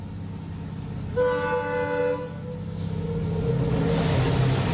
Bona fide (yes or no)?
yes